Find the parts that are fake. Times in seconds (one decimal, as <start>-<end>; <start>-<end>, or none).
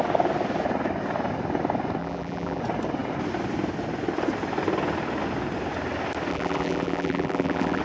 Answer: 2.0-2.6; 6.3-7.8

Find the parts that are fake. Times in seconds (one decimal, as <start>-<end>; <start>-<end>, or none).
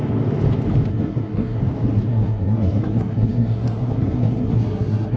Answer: 0.9-1.6; 2.1-5.2